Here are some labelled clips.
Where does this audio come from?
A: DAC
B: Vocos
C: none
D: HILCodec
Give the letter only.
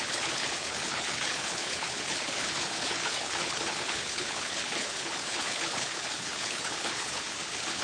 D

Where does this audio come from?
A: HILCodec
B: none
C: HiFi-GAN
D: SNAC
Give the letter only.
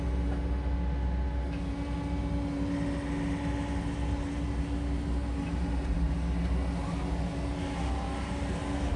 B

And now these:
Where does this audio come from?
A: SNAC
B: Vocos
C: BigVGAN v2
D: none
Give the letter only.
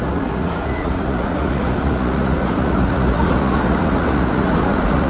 B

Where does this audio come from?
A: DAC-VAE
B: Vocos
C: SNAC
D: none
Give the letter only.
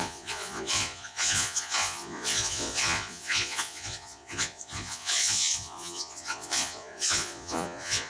B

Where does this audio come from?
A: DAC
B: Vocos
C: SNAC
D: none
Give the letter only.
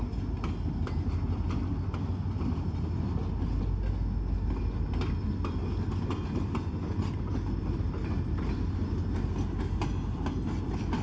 D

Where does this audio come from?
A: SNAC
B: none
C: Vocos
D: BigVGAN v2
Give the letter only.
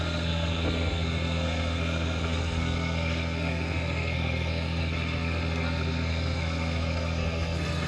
A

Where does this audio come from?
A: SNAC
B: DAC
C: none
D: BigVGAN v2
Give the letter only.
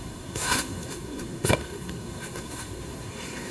A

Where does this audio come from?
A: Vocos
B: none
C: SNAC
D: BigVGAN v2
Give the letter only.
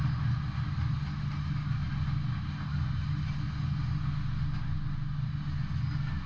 B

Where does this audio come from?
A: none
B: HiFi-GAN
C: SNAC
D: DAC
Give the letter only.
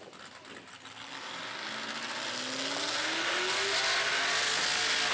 A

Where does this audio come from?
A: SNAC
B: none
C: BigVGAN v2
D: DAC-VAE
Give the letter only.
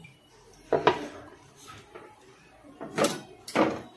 B